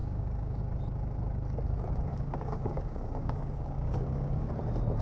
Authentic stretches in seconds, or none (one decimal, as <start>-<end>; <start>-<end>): 0.6-2.1; 4.5-5.0